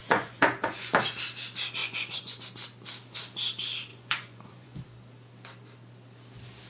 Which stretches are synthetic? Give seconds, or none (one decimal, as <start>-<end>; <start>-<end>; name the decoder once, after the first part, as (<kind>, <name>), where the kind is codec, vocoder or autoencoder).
0.0-0.9 (vocoder, Vocos); 1.8-2.4; 3.9-4.8